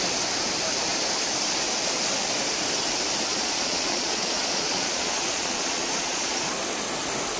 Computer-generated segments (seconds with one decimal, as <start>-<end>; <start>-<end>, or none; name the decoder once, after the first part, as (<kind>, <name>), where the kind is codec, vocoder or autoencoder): 3.3-6.4 (vocoder, Vocos)